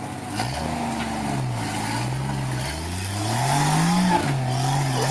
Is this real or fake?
real